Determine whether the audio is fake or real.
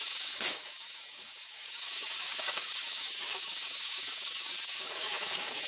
fake